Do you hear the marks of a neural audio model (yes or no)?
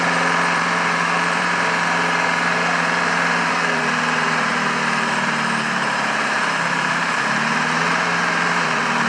yes